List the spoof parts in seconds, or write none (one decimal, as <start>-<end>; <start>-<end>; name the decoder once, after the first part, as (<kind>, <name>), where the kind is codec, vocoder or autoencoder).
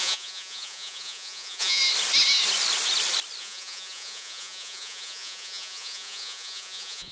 0.0-1.8 (vocoder, Vocos); 3.4-7.1